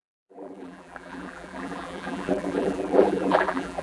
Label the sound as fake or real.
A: fake